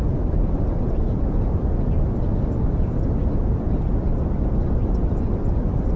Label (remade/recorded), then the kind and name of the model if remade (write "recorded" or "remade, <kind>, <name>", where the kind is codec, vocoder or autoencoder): recorded